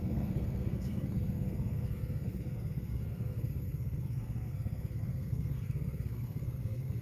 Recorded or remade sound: remade